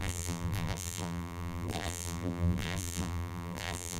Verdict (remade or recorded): remade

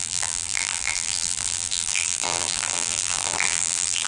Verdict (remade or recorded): remade